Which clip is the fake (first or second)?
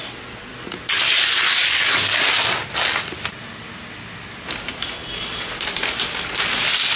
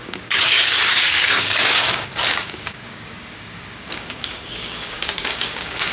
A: second